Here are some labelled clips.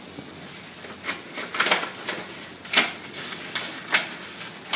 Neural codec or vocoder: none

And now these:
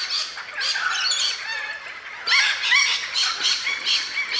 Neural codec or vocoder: none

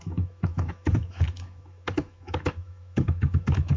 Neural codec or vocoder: autoencoder, DAC-VAE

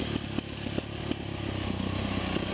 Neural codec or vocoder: none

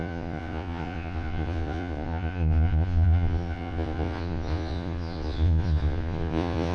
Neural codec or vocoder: vocoder, Vocos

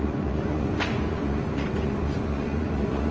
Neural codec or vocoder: vocoder, Vocos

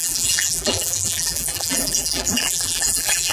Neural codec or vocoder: vocoder, BigVGAN v2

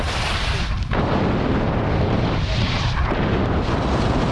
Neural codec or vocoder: vocoder, BigVGAN v2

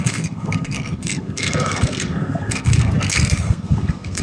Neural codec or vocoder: codec, SNAC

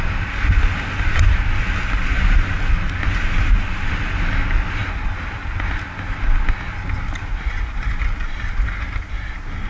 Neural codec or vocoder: none